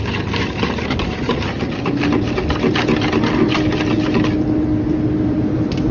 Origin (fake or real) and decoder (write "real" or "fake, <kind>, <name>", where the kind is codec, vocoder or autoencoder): real